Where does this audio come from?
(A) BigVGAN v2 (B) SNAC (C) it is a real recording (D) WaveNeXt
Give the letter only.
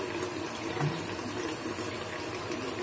A